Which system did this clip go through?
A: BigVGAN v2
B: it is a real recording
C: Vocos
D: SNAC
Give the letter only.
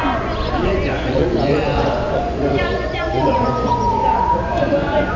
C